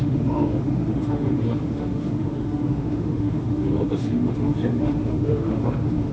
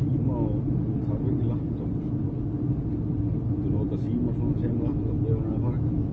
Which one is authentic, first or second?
second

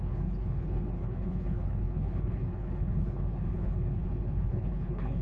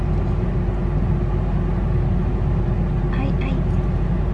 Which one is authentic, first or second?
second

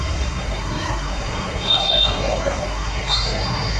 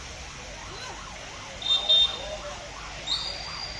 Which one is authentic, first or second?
second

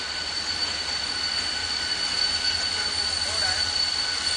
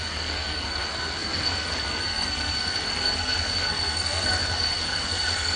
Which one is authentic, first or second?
first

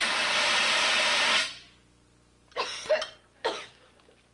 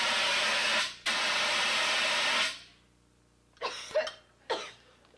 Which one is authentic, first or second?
second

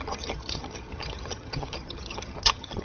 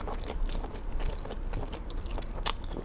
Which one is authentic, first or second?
second